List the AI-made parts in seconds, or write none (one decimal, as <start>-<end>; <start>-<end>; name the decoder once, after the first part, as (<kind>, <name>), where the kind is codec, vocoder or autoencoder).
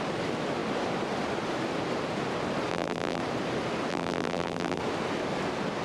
2.7-3.2 (vocoder, BigVGAN v2); 3.9-4.8